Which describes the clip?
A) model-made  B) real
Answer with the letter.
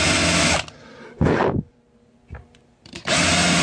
A